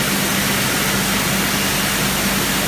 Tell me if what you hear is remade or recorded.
recorded